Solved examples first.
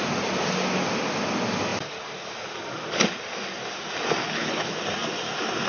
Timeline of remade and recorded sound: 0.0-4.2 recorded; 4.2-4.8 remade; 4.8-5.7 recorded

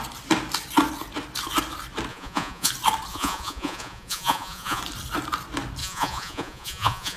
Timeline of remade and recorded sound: 0.0-2.1 recorded; 2.1-2.7 remade; 2.7-3.1 recorded; 3.1-4.8 remade; 4.8-5.8 recorded; 5.8-7.2 remade

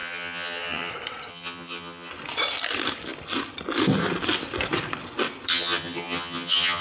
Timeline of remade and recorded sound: 0.0-0.9 remade; 0.9-1.3 recorded; 1.3-2.1 remade; 2.1-5.5 recorded; 5.5-6.8 remade

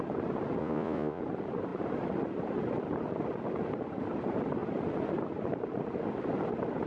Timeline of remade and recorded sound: 0.0-0.6 recorded; 0.6-1.2 remade; 1.2-6.9 recorded

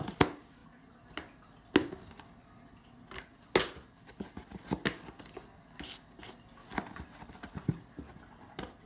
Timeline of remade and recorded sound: 0.0-8.9 recorded

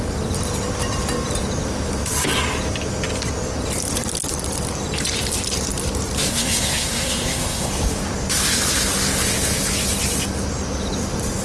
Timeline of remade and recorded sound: 0.0-6.3 recorded; 6.3-7.7 remade; 7.7-11.4 recorded

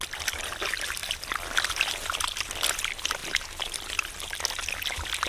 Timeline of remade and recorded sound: 0.0-5.3 recorded

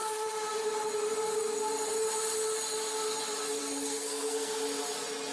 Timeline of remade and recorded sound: 0.0-3.6 recorded; 3.6-4.6 remade; 4.6-5.3 recorded